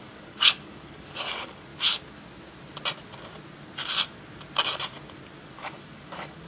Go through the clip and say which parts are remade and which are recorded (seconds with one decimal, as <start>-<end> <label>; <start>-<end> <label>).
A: 0.0-1.7 remade; 1.7-5.4 recorded; 5.4-6.5 remade